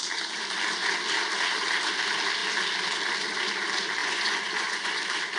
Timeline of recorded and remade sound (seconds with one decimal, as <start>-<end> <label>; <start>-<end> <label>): 0.0-4.0 recorded; 4.0-5.0 remade; 5.0-5.4 recorded